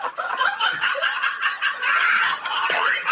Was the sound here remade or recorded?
remade